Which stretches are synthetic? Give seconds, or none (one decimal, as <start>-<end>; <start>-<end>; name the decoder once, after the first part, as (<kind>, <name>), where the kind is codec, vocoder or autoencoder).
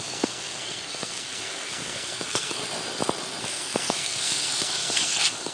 0.0-2.6 (codec, SNAC); 3.4-5.5